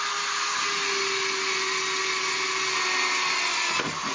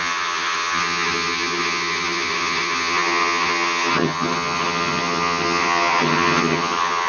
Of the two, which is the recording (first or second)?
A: first